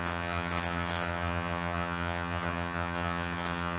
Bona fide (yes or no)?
no